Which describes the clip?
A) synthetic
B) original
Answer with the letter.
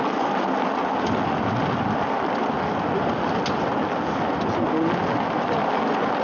B